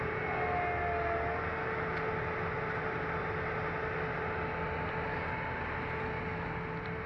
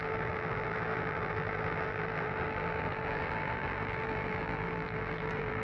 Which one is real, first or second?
first